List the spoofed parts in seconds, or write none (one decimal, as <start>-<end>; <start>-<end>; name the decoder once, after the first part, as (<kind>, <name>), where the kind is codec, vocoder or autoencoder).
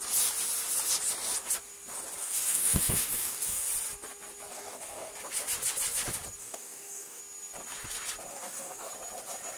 2.2-3.7 (codec, DAC); 4.5-5.1; 6.4-7.2; 8.3-8.9